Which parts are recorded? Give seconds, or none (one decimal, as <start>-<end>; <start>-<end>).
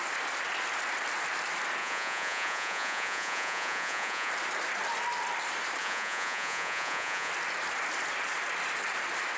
0.0-1.8; 4.3-5.8; 7.3-9.4